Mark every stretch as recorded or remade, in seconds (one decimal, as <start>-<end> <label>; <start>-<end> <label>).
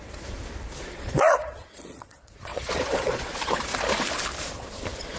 0.0-3.7 remade; 3.7-4.4 recorded; 4.4-5.2 remade